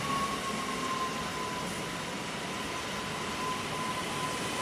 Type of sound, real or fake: real